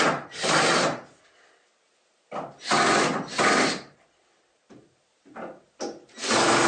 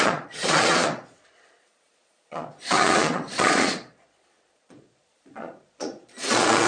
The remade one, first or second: second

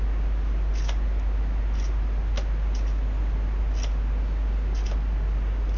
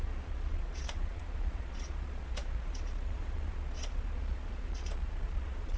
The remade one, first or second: second